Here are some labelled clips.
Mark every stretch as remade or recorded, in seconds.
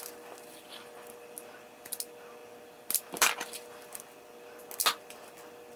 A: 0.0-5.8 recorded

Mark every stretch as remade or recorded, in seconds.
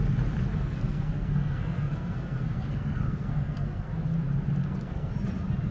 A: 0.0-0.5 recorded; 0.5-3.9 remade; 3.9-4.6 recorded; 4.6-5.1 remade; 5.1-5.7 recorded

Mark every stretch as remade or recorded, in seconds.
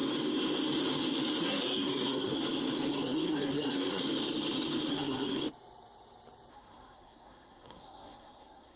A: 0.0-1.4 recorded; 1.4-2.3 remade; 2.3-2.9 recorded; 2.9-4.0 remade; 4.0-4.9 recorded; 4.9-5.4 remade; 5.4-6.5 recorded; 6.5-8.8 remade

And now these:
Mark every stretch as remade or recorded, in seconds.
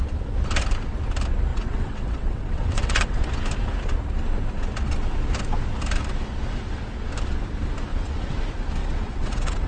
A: 0.0-1.5 recorded; 1.5-3.2 remade; 3.2-7.9 recorded; 7.9-8.4 remade; 8.4-8.8 recorded; 8.8-9.7 remade